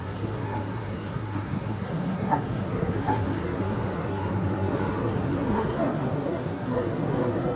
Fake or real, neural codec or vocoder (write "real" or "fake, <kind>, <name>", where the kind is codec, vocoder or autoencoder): fake, codec, SNAC